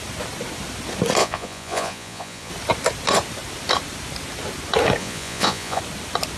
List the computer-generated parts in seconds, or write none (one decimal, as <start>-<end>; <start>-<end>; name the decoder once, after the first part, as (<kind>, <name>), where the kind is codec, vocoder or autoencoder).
1.2-2.5 (vocoder, Vocos); 5.0-5.8